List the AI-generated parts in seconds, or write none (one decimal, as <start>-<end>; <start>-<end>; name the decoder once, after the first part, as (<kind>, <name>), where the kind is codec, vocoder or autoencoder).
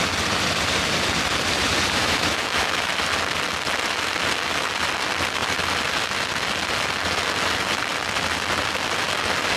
2.0-2.9 (autoencoder, DAC-VAE)